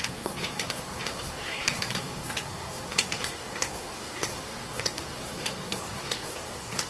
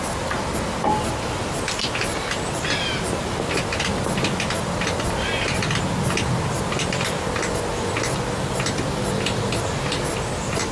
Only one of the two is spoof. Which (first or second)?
first